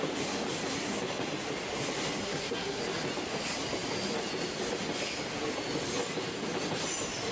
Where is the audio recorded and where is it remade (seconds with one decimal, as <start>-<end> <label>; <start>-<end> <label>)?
0.0-2.2 recorded; 2.2-2.8 remade; 2.8-7.3 recorded